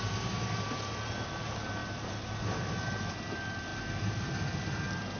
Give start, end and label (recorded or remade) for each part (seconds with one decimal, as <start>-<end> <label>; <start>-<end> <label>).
0.0-5.2 recorded